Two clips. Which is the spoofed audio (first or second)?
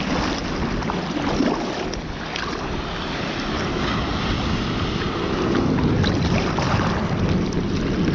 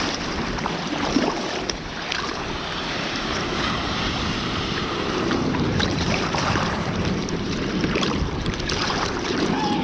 second